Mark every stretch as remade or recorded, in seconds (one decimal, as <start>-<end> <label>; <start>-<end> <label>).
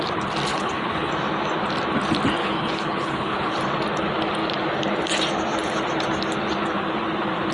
0.0-0.5 recorded; 0.5-1.1 remade; 1.1-2.4 recorded; 2.4-3.6 remade; 3.6-7.5 recorded